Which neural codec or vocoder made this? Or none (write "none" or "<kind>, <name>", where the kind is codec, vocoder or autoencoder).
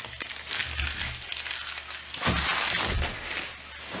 none